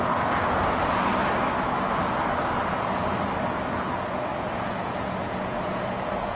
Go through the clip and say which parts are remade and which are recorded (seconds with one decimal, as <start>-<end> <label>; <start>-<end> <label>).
0.0-1.1 remade; 1.1-3.7 recorded; 3.7-6.3 remade